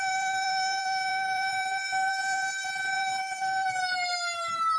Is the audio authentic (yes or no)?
no